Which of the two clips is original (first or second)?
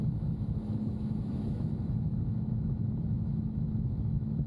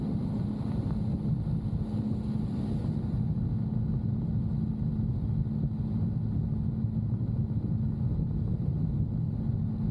second